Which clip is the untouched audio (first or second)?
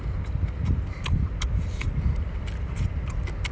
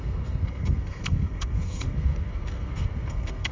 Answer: first